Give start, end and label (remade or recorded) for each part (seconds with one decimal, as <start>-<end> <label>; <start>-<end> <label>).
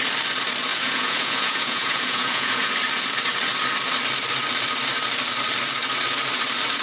0.0-0.7 recorded; 0.7-2.7 remade; 2.7-6.8 recorded